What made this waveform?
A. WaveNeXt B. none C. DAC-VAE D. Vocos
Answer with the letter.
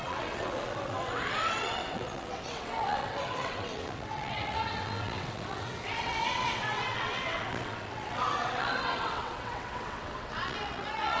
A